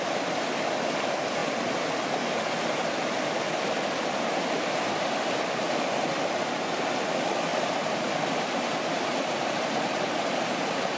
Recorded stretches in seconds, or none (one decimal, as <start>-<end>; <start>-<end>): 0.0-7.5